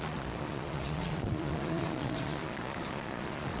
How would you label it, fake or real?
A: fake